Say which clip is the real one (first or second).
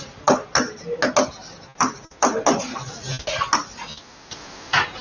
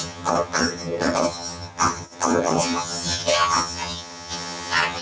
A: first